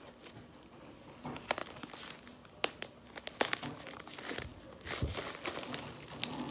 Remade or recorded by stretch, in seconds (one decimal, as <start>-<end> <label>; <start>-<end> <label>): 0.0-6.5 recorded